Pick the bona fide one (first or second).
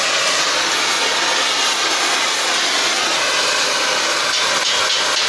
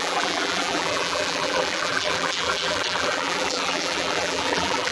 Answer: first